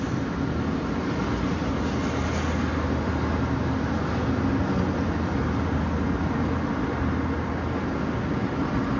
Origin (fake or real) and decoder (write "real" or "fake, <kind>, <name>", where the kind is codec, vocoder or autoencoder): real